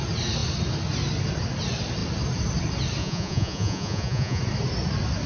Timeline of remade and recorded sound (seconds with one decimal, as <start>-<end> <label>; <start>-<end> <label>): 0.0-3.0 recorded; 3.0-4.4 remade; 4.4-5.3 recorded